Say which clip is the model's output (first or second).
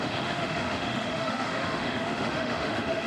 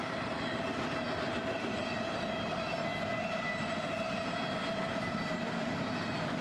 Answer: first